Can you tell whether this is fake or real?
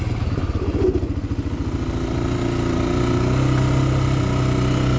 real